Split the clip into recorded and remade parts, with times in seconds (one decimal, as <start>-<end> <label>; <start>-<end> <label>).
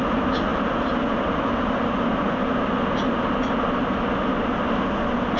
0.0-5.4 recorded